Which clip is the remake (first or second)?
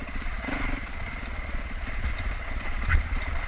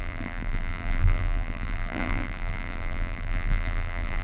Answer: second